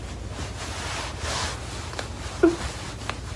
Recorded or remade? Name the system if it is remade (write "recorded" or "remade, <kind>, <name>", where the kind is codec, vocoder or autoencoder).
recorded